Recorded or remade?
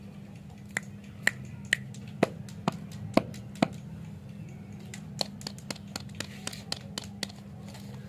recorded